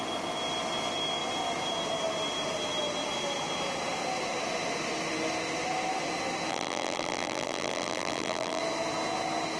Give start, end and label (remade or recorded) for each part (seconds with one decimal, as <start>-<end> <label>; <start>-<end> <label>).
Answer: 0.0-6.5 recorded; 6.5-8.6 remade; 8.6-9.6 recorded